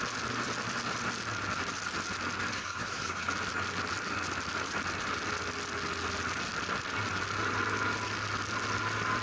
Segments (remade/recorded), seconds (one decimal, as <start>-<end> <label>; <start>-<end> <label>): 0.0-2.5 recorded; 2.5-3.3 remade; 3.3-9.2 recorded